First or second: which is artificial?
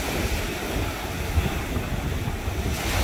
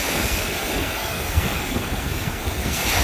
second